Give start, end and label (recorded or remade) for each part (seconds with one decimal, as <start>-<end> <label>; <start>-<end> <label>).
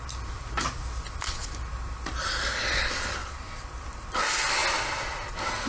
0.0-5.7 recorded